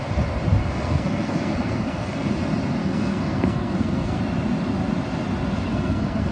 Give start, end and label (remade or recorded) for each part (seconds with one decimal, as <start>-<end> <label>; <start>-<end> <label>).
0.0-0.6 recorded; 0.6-2.3 remade; 2.3-2.8 recorded; 2.8-4.2 remade; 4.2-5.7 recorded; 5.7-6.3 remade